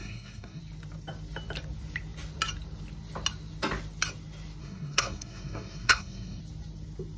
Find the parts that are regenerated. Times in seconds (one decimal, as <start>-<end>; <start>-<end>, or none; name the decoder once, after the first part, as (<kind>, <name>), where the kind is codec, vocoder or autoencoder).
0.0-0.6 (codec, SNAC); 4.6-6.4